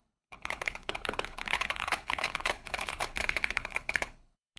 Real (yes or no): no